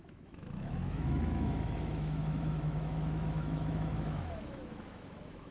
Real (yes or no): no